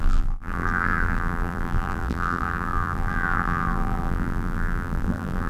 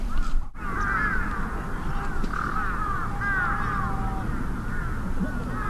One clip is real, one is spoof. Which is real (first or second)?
second